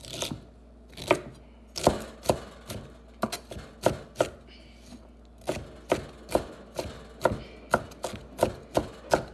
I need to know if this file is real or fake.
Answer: real